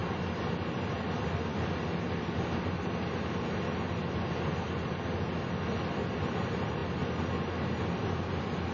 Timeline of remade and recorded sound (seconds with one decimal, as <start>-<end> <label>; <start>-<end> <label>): 0.0-8.7 recorded

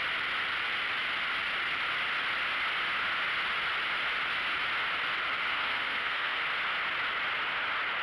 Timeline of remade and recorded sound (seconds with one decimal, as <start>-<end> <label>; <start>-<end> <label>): 0.0-5.5 recorded; 5.5-6.4 remade; 6.4-8.0 recorded

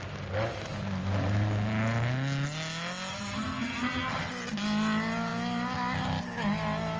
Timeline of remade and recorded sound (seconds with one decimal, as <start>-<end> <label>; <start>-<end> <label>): 0.0-3.1 recorded; 3.1-4.3 remade; 4.3-7.0 recorded

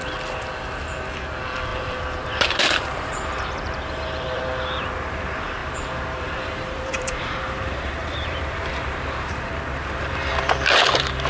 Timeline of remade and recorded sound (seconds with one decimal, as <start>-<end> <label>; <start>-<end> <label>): 0.0-1.7 recorded; 1.7-4.4 remade; 4.4-5.6 recorded; 5.6-9.6 remade; 9.6-11.3 recorded

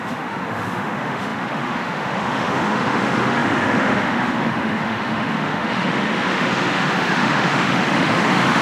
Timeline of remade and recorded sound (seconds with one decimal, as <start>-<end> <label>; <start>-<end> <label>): 0.0-8.6 remade

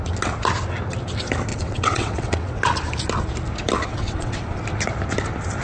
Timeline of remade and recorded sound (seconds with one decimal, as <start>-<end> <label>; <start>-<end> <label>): 0.0-1.5 recorded; 1.5-2.6 remade; 2.6-3.9 recorded; 3.9-4.6 remade; 4.6-5.6 recorded

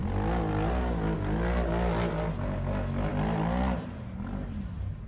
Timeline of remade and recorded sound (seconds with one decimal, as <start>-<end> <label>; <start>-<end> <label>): 0.0-5.1 recorded